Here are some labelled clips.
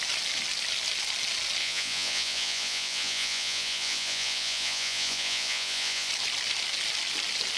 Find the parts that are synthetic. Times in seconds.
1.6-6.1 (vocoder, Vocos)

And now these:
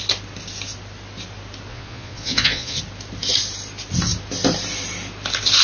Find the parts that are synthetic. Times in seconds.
1.7-2.8 (vocoder, Vocos)

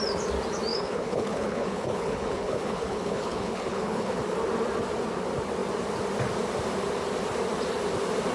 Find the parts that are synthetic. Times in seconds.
0.7-4.2 (codec, HILCodec)

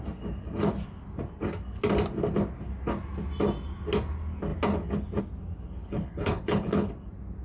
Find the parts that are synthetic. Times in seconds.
5.8-6.9 (codec, HILCodec)

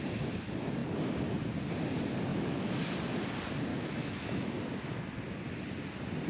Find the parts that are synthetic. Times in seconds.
2.3-2.8 (autoencoder, DAC-VAE); 3.7-4.6

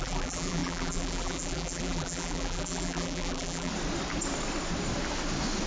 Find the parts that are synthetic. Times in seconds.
0.0-3.7 (vocoder, BigVGAN v2)

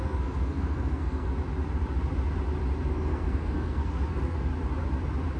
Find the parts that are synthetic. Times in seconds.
0.0-1.3 (codec, SNAC); 2.9-4.5

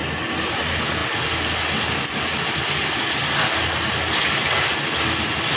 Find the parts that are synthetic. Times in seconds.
none